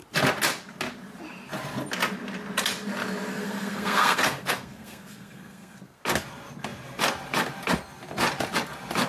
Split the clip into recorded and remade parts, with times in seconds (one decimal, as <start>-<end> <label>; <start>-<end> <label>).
0.0-3.3 recorded; 3.3-6.0 remade; 6.0-9.1 recorded